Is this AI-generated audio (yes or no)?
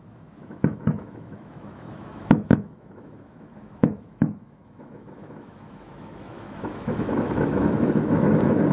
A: yes